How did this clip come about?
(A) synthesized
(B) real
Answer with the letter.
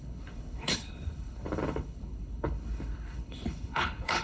A